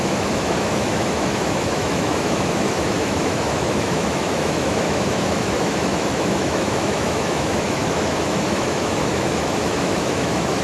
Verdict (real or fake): fake